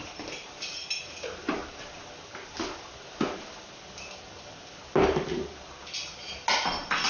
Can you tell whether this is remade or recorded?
recorded